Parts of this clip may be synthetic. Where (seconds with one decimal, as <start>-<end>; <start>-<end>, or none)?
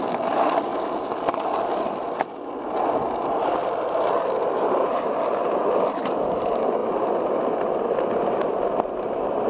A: 0.0-0.7; 3.5-6.8; 7.7-9.5